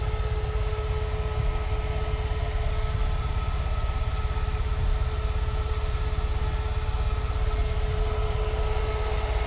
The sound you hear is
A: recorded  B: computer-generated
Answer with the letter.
A